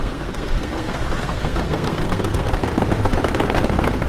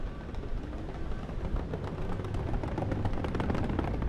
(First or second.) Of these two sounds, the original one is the second